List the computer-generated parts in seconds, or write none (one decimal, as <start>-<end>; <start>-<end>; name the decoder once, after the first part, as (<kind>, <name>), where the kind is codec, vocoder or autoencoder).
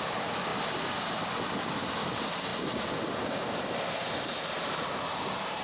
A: none